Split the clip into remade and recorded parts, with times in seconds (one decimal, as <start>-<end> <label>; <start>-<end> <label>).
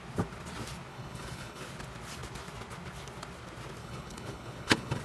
0.0-0.9 recorded; 0.9-1.6 remade; 1.6-3.8 recorded; 3.8-5.0 remade